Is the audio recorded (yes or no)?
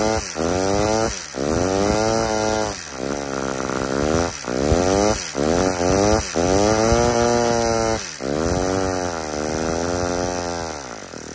yes